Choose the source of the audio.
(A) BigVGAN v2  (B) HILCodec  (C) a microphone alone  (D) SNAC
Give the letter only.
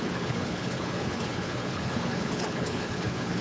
B